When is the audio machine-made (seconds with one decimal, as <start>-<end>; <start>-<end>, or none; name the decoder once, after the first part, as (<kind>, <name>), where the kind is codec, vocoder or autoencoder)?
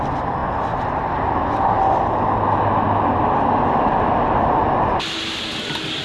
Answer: none